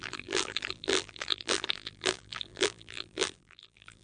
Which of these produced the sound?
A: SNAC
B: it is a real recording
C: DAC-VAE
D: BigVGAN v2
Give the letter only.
D